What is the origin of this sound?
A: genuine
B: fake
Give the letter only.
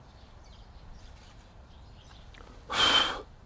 B